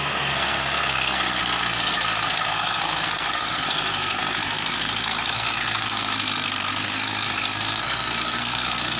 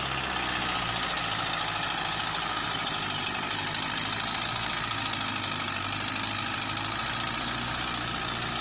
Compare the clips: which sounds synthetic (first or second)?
first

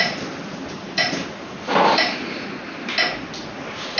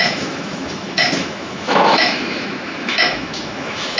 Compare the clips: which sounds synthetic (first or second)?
second